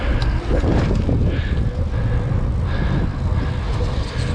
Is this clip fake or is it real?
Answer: real